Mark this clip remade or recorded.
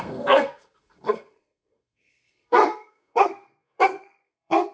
remade